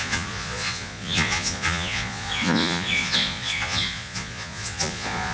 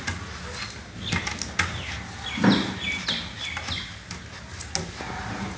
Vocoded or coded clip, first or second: first